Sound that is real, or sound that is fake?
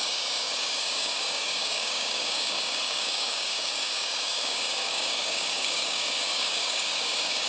fake